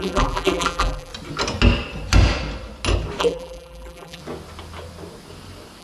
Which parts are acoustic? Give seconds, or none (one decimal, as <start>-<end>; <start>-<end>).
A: 1.1-3.2; 4.2-5.8